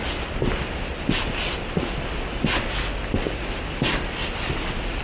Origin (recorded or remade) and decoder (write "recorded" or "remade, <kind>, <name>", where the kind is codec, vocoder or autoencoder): recorded